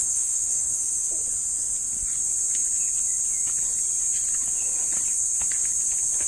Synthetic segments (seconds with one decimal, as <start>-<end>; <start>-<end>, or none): 0.0-0.8